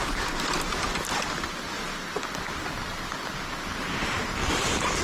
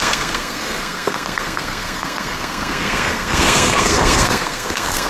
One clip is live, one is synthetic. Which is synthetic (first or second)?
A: second